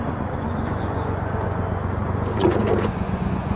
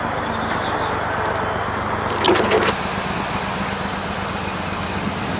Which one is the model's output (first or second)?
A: first